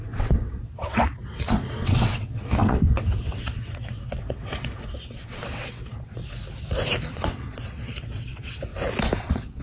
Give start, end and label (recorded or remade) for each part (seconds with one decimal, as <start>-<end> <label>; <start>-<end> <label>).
0.0-6.2 remade; 6.2-7.0 recorded; 7.0-8.7 remade; 8.7-9.2 recorded; 9.2-9.6 remade